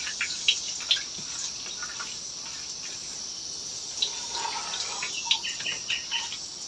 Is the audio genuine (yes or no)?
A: yes